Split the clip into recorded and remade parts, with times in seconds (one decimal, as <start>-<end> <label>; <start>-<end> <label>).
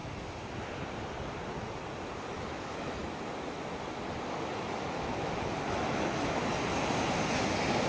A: 0.0-2.3 recorded; 2.3-3.0 remade; 3.0-4.5 recorded; 4.5-6.5 remade; 6.5-7.9 recorded